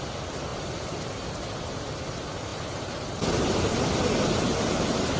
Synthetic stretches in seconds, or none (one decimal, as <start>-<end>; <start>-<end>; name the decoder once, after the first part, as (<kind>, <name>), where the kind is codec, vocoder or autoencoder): none